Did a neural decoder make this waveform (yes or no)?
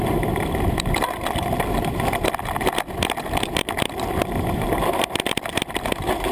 yes